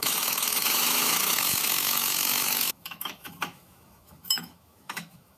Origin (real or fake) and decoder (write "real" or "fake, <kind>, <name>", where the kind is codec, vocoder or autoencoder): fake, autoencoder, DAC-VAE